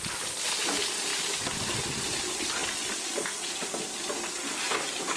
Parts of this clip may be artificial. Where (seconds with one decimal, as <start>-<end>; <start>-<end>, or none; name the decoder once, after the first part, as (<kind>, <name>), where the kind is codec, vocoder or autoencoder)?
none